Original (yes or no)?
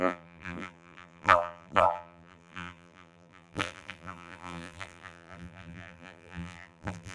no